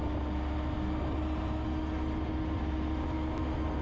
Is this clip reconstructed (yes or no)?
no